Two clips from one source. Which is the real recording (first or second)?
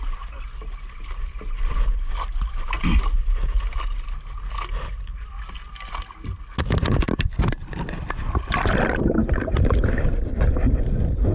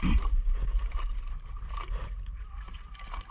first